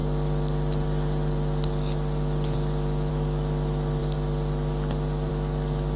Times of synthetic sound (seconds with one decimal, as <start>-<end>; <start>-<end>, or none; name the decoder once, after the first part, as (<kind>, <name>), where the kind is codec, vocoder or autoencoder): 3.1-4.0 (autoencoder, DAC-VAE); 5.3-6.0